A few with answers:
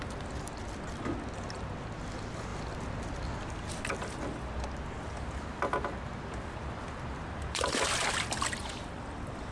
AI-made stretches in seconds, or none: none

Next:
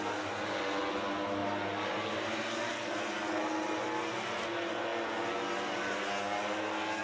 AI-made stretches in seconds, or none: none

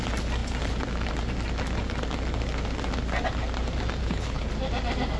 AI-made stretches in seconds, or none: 4.0-4.5 (codec, HILCodec)

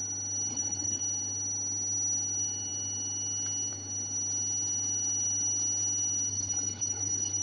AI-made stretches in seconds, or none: 0.5-1.0 (codec, HILCodec); 6.3-7.4

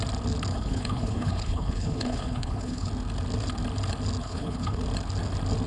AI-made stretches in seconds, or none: 0.5-2.9 (codec, HILCodec); 4.2-4.8

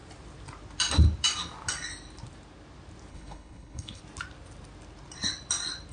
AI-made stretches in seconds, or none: 3.1-4.0 (codec, HILCodec)

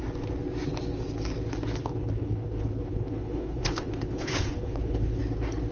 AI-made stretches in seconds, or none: 1.8-5.2 (codec, HILCodec)

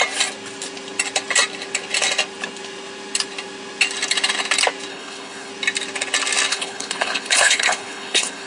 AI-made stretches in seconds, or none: 4.9-5.5 (codec, HILCodec); 6.5-8.5